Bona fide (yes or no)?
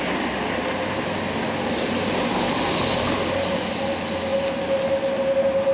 yes